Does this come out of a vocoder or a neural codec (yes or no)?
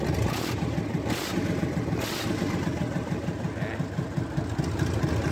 no